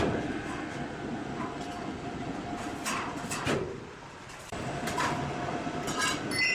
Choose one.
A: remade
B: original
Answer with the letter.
B